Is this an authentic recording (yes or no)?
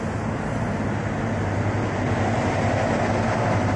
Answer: yes